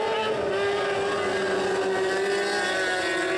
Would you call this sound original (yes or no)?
yes